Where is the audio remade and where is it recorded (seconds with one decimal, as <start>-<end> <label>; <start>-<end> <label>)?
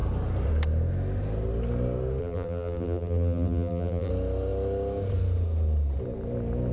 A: 0.0-2.2 recorded; 2.2-4.1 remade; 4.1-6.7 recorded